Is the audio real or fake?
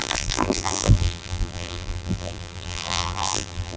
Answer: fake